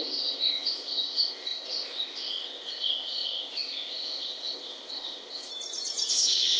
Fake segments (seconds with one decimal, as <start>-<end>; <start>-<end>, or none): 0.0-5.5; 6.1-6.6